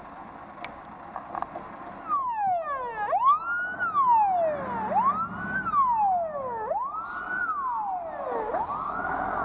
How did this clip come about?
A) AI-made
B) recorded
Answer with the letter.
B